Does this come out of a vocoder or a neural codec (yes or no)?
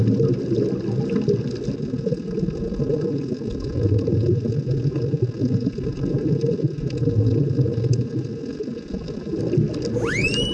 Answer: no